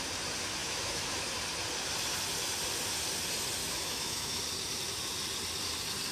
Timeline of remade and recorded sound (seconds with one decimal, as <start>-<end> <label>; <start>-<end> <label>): 0.0-0.6 recorded; 0.6-1.3 remade; 1.3-3.6 recorded; 3.6-4.4 remade; 4.4-6.1 recorded